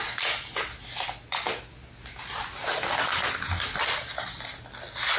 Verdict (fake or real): real